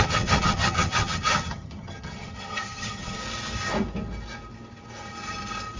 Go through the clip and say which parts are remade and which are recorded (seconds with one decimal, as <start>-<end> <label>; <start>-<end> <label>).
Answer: 0.0-3.2 remade; 3.2-5.8 recorded